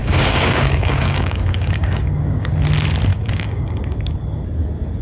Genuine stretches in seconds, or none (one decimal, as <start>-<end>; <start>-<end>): 2.5-3.1; 3.8-5.0